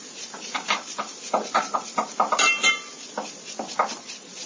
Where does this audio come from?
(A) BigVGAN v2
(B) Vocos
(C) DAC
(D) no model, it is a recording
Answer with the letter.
D